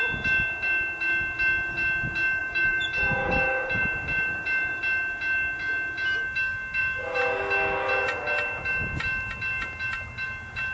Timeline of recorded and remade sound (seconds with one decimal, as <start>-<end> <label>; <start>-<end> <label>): 0.0-2.4 recorded; 2.4-4.8 remade; 4.8-6.8 recorded; 6.8-7.4 remade; 7.4-10.7 recorded